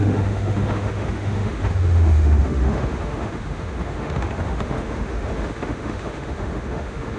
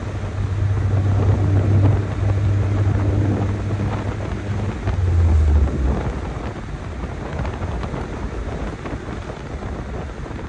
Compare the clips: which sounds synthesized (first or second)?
first